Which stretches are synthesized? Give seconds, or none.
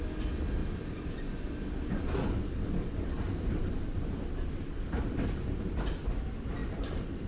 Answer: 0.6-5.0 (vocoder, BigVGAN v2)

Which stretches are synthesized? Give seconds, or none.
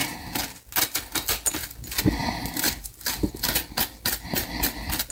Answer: 2.2-3.3 (vocoder, BigVGAN v2)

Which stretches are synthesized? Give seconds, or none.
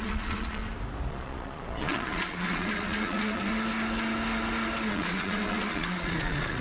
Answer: 0.0-0.6 (vocoder, Vocos); 1.1-3.5; 4.9-6.6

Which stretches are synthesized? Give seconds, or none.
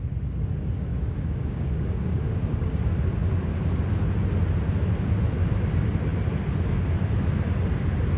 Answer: 0.9-2.8 (codec, DAC)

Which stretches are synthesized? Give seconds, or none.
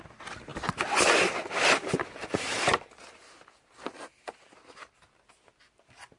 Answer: none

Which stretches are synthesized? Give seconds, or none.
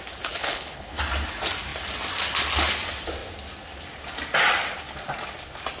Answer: 0.4-1.0 (codec, HILCodec)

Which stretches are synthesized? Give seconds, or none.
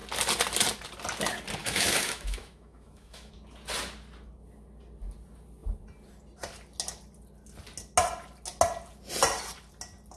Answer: 1.6-3.3 (autoencoder, DAC-VAE)